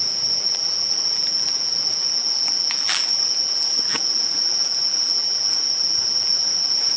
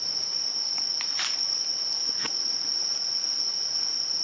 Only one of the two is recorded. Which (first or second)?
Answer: second